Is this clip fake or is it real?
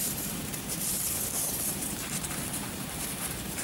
fake